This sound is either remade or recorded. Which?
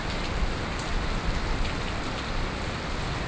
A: recorded